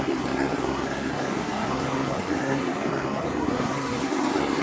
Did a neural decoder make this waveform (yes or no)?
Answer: yes